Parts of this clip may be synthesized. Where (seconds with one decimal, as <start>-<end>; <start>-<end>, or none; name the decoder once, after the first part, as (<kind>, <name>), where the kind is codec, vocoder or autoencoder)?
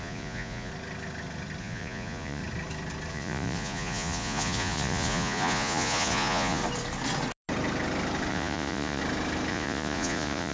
0.0-0.7 (vocoder, Vocos); 1.6-2.4; 3.1-6.6; 8.3-9.0; 9.5-10.5